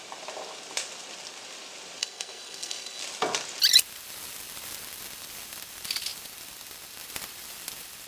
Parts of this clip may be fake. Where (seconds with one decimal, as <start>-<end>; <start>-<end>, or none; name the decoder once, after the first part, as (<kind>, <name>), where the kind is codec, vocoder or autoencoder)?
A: 2.0-3.0 (codec, SNAC)